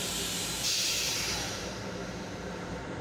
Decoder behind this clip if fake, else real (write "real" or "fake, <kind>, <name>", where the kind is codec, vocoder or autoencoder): fake, vocoder, BigVGAN v2